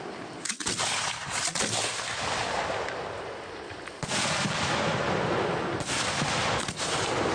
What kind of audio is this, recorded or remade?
recorded